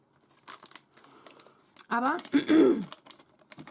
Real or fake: real